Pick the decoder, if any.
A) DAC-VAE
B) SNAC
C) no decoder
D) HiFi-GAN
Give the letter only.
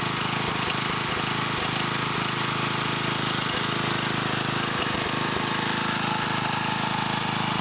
C